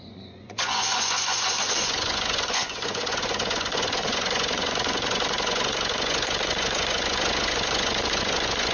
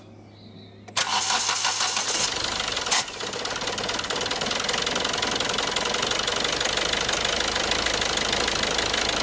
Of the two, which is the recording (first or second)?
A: second